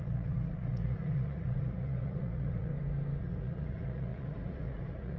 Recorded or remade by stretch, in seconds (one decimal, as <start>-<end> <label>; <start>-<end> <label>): 0.0-2.7 remade; 2.7-3.2 recorded; 3.2-5.2 remade